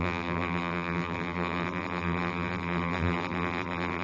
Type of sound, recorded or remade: remade